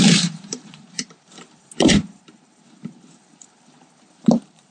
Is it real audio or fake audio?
fake